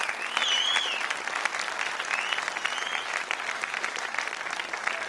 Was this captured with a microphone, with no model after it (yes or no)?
yes